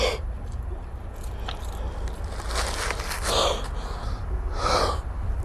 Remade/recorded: recorded